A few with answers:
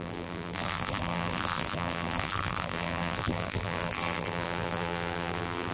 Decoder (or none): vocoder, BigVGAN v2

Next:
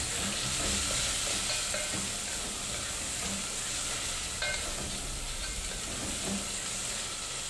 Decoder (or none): none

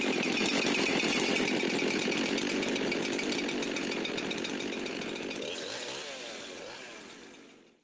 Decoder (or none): none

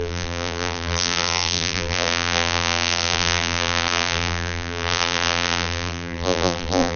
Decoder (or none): vocoder, BigVGAN v2